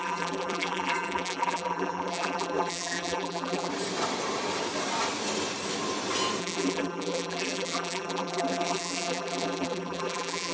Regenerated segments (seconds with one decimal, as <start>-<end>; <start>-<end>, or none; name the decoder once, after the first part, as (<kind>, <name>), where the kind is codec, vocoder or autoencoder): 0.0-3.7 (vocoder, BigVGAN v2); 6.4-10.5